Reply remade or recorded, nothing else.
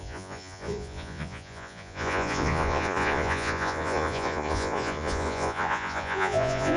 remade